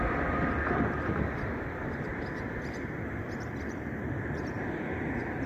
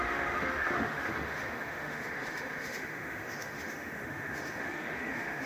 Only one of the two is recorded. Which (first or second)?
first